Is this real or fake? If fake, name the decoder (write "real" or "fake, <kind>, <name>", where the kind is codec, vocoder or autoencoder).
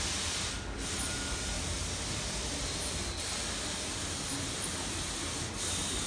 real